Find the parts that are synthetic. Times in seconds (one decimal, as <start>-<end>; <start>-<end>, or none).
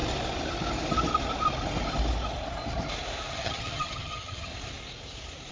3.3-4.5